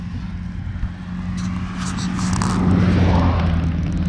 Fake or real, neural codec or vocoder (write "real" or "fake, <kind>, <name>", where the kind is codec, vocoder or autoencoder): real